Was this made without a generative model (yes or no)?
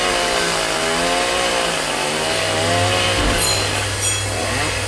yes